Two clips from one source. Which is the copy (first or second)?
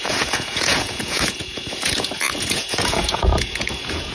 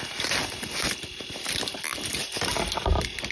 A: first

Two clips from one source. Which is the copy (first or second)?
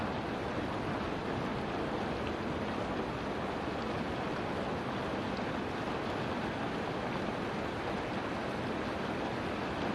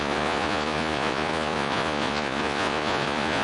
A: second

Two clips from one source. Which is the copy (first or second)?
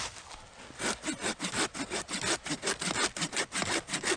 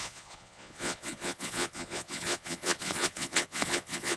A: second